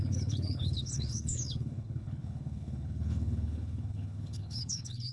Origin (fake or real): fake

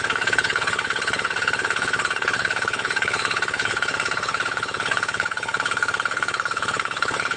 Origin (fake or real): fake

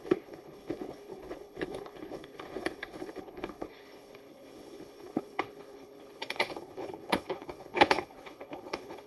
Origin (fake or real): fake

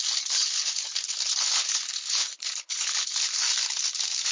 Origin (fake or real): fake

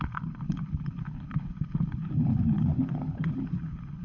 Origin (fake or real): fake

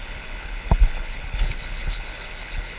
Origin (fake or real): fake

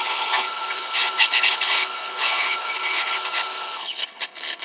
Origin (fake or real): fake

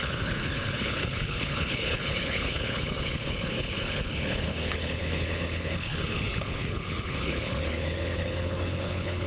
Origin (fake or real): fake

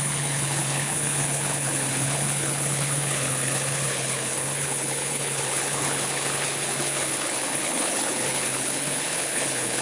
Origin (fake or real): fake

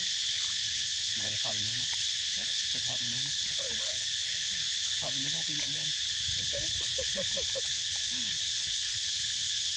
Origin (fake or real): fake